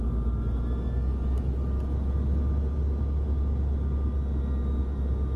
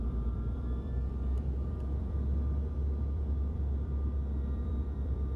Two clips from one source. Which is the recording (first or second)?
first